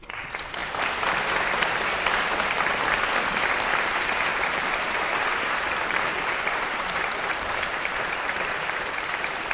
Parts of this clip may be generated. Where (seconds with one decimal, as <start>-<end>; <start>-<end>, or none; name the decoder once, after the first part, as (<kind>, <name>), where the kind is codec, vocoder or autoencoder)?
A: 4.3-9.0 (vocoder, BigVGAN v2)